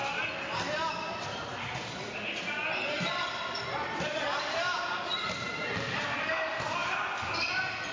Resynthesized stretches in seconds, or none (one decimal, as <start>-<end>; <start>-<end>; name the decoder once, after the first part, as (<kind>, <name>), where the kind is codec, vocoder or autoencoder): 3.8-5.1 (vocoder, BigVGAN v2); 6.0-7.9